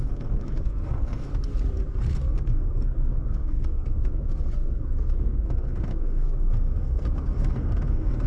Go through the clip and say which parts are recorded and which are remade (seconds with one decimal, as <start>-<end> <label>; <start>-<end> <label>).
0.0-1.3 remade; 1.3-2.0 recorded; 2.0-8.3 remade

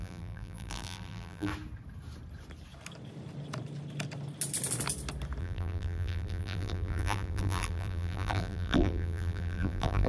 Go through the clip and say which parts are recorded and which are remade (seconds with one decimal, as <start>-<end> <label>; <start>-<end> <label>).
0.0-1.5 remade; 1.5-5.4 recorded; 5.4-10.1 remade

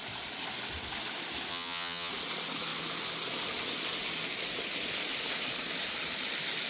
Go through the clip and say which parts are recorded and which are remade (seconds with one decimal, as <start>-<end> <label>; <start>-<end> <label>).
0.0-1.5 recorded; 1.5-2.1 remade; 2.1-6.7 recorded